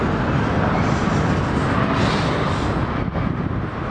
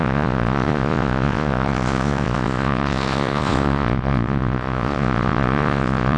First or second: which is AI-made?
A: second